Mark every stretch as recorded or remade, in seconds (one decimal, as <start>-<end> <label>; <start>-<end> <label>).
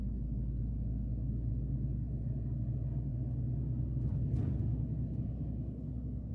0.0-6.3 recorded